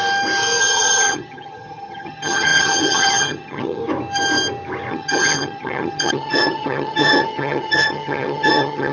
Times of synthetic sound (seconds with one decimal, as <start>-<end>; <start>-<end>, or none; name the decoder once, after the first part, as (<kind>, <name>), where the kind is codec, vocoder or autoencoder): 0.6-3.8 (vocoder, HiFi-GAN); 4.9-8.9